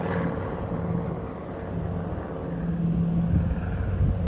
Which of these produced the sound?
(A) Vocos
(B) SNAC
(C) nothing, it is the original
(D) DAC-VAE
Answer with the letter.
C